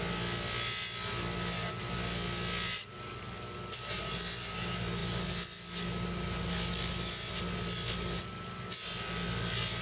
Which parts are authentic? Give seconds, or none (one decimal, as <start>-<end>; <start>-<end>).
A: 0.0-9.8